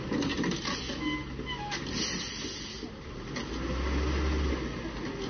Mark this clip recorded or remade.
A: recorded